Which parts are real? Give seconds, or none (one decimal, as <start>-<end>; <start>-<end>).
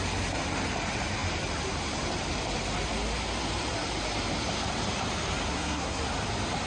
0.0-5.5; 6.0-6.7